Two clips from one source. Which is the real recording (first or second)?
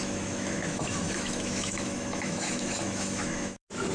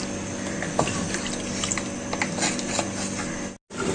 second